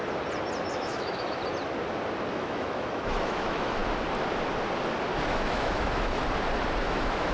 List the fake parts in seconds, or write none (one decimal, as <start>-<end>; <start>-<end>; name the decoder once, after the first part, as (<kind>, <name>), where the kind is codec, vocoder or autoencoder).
0.7-1.4 (autoencoder, DAC-VAE); 2.3-3.8; 5.3-6.2; 6.8-7.3